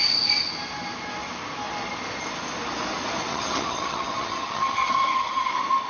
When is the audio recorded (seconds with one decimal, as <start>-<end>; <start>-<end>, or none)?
0.0-3.3; 5.5-5.9